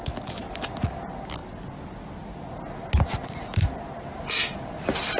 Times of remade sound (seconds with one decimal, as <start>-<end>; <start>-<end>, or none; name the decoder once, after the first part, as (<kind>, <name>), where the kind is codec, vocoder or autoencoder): none